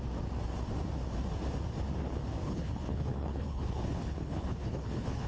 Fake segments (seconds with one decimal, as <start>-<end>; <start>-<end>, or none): 2.4-5.3